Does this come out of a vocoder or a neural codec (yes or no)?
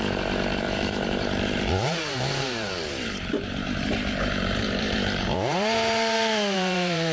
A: yes